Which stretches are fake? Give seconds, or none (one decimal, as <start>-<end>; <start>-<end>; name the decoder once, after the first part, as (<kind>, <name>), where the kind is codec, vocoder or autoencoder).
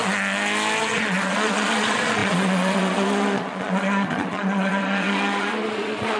0.8-6.2 (vocoder, Vocos)